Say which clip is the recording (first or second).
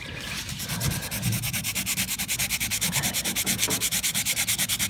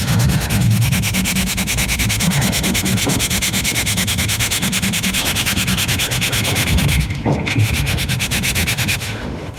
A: first